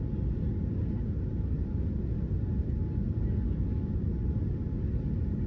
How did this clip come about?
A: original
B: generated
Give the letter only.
A